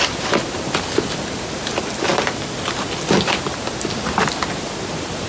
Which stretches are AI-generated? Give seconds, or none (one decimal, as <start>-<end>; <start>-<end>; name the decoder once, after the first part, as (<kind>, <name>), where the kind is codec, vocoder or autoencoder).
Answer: none

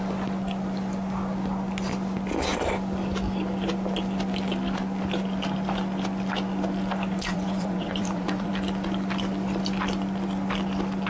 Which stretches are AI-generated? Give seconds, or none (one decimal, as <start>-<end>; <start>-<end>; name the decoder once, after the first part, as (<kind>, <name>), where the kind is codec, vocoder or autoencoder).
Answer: 7.3-8.5 (vocoder, Vocos)

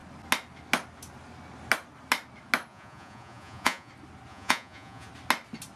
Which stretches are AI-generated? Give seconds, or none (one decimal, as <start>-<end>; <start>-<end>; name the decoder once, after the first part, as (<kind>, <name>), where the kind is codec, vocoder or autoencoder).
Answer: 2.7-3.9 (vocoder, Vocos); 4.3-5.1

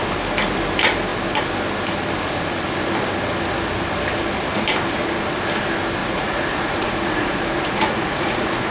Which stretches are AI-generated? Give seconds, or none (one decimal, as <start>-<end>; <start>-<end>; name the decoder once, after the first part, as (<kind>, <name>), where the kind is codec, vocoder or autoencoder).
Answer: 6.0-8.7 (vocoder, Vocos)

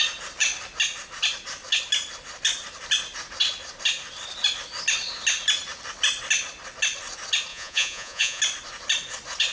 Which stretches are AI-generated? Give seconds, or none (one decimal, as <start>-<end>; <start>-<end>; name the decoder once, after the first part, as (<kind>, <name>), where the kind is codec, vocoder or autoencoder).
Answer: 7.5-8.4 (vocoder, Vocos)

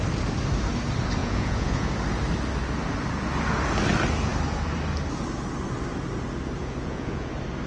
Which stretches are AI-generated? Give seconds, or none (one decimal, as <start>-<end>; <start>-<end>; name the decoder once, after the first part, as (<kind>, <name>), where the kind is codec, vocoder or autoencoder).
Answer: 1.2-1.9 (vocoder, Vocos); 6.6-7.3

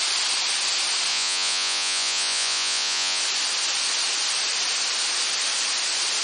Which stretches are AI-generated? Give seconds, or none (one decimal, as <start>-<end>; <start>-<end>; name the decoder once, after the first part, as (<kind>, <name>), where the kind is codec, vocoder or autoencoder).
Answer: 1.1-3.2 (vocoder, Vocos)

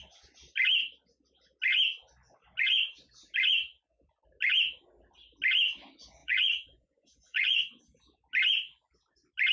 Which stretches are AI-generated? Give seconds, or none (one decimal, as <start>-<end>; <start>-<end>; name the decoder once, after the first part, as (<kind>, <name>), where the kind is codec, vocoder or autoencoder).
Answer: 6.2-7.8 (vocoder, Vocos)